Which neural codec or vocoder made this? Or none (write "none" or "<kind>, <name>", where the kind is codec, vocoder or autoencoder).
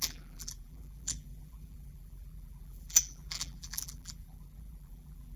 vocoder, BigVGAN v2